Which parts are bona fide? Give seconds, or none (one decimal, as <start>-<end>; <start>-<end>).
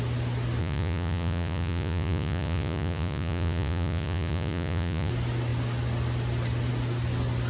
0.0-0.6; 5.1-7.5